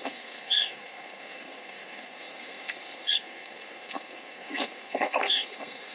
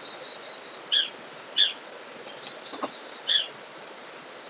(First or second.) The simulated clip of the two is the first